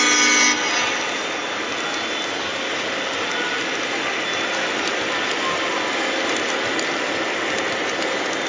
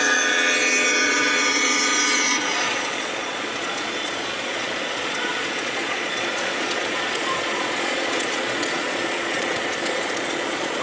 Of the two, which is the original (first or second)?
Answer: first